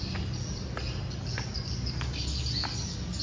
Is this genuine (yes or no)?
yes